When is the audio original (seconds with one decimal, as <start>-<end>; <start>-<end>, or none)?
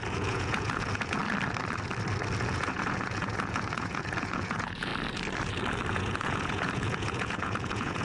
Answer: 1.2-2.4; 4.9-5.9